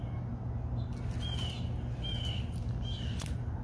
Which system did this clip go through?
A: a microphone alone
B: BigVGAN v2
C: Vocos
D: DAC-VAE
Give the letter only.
A